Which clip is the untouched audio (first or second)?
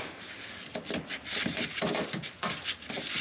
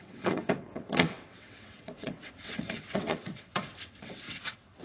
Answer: first